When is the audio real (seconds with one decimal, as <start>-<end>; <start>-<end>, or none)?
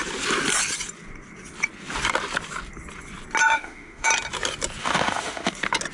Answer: 0.0-3.4; 4.1-4.8; 5.5-5.9